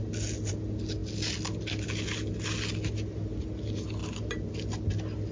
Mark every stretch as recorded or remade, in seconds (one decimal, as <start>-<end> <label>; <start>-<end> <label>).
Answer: 0.0-5.3 recorded